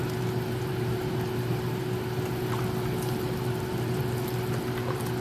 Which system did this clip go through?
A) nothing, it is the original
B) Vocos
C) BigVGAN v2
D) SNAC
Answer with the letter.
A